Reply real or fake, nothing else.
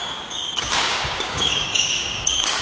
fake